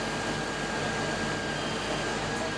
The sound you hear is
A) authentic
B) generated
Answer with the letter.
A